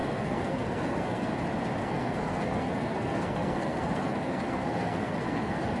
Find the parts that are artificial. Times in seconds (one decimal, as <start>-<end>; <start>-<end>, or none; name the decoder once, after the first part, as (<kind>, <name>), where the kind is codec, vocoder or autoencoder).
0.0-1.3 (codec, SNAC); 1.8-5.8